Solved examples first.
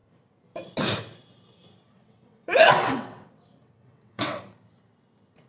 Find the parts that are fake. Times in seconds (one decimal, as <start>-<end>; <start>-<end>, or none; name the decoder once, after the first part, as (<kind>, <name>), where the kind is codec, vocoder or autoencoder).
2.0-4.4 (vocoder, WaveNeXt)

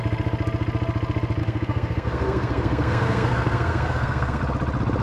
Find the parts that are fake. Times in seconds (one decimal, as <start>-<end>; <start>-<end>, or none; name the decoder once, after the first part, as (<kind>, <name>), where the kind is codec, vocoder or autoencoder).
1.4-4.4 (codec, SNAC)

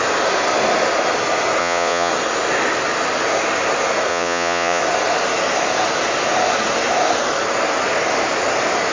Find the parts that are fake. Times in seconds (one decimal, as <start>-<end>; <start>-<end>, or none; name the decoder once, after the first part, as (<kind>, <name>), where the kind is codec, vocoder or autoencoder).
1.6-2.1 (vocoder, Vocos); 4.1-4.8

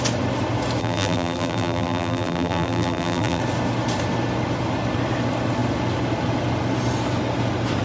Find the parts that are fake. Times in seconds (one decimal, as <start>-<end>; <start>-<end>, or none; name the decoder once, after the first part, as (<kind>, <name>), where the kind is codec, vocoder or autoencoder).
0.8-3.4 (vocoder, BigVGAN v2)

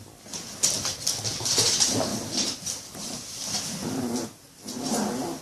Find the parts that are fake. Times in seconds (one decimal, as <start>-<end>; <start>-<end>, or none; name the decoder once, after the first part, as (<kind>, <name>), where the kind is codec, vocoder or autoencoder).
2.1-3.6 (vocoder, BigVGAN v2)

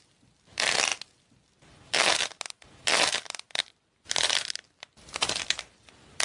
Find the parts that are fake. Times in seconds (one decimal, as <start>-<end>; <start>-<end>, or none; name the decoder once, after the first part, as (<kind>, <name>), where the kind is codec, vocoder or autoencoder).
0.0-0.9 (vocoder, BigVGAN v2); 3.3-6.2

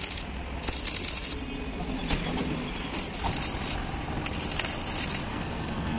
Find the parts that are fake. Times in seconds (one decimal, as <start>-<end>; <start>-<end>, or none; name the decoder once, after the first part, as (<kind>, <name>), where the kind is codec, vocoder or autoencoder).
5.3-6.0 (codec, SNAC)

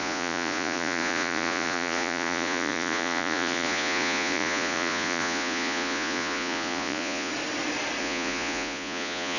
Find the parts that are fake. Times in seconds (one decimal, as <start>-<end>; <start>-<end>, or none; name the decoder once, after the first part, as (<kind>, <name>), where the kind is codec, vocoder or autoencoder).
0.0-7.3 (vocoder, Vocos); 8.0-9.4